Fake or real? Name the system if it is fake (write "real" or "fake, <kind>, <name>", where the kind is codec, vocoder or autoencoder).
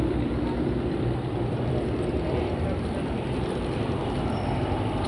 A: fake, vocoder, BigVGAN v2